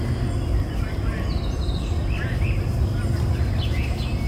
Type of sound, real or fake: real